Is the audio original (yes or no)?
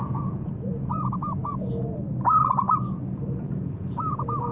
no